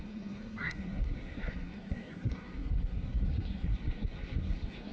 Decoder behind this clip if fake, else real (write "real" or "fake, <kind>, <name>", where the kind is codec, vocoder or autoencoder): fake, codec, SNAC